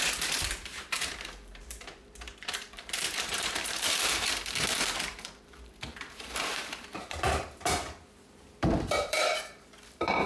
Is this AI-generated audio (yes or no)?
yes